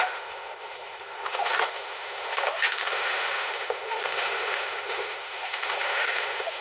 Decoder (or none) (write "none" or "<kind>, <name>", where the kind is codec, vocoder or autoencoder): autoencoder, DAC-VAE